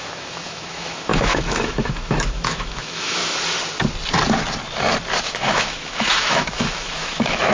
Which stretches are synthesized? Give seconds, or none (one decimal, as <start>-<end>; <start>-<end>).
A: 0.0-3.2; 5.2-7.5